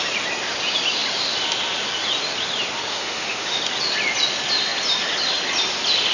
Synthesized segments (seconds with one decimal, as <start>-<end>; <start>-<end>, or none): 2.9-3.6